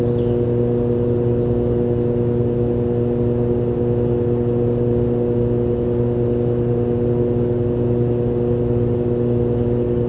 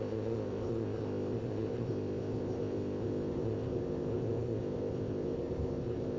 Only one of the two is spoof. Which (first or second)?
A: second